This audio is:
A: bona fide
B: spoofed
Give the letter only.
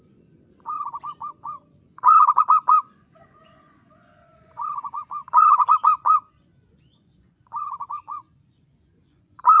B